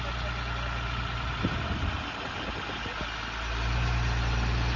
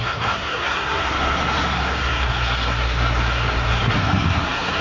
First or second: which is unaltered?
first